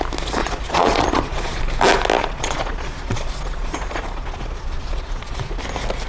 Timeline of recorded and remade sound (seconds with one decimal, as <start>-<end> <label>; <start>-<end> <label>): 0.0-0.4 recorded; 0.4-1.6 remade; 1.6-2.2 recorded; 2.2-5.6 remade; 5.6-6.1 recorded

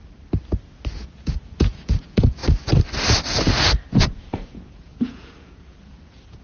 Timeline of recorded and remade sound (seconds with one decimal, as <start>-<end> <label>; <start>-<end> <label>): 0.0-1.0 recorded; 1.0-2.4 remade; 2.4-3.9 recorded; 3.9-6.4 remade

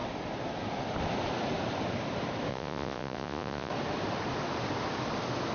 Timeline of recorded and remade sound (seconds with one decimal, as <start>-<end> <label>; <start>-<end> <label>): 0.0-2.5 recorded; 2.5-3.7 remade; 3.7-5.5 recorded